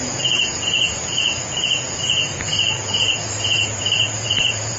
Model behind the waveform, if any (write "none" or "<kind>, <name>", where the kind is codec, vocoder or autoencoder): vocoder, Vocos